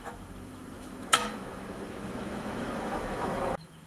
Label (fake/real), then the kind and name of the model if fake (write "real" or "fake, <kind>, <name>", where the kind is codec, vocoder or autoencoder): fake, autoencoder, DAC-VAE